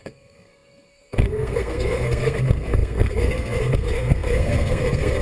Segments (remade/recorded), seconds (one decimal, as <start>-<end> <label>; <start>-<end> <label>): 0.0-5.2 remade